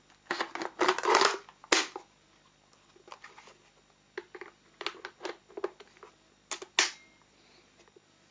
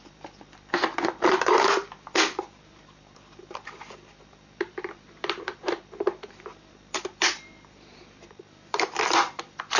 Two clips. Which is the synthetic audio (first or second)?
second